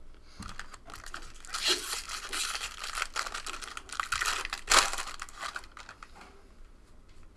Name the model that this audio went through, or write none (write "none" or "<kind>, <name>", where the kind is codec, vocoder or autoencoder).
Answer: none